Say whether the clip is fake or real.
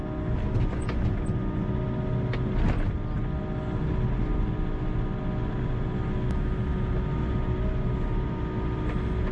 real